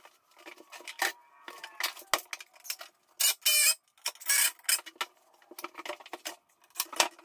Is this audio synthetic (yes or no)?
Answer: no